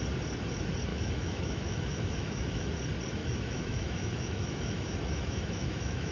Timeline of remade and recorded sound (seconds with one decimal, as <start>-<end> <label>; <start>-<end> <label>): 0.0-0.9 recorded; 0.9-2.7 remade; 2.7-3.2 recorded; 3.2-6.1 remade